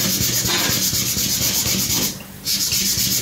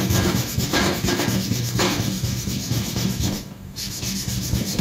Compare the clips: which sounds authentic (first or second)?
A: first